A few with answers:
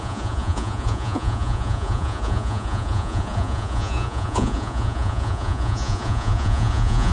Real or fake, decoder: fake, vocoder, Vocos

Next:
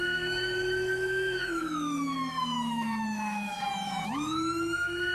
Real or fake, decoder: fake, autoencoder, DAC-VAE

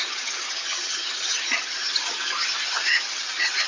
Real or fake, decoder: fake, vocoder, HiFi-GAN